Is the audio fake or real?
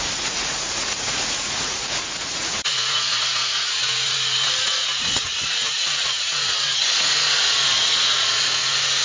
fake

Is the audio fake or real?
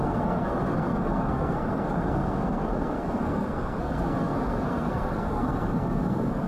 fake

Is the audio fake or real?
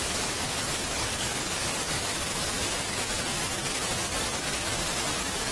fake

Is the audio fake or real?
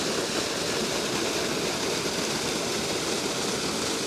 real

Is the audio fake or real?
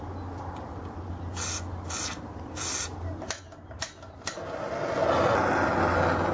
real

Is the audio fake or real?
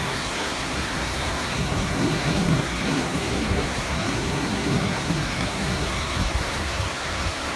fake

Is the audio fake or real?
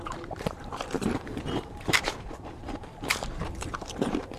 fake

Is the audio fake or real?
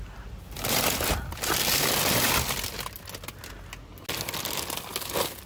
real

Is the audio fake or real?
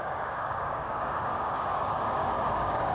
fake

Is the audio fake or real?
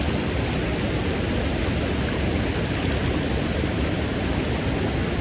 real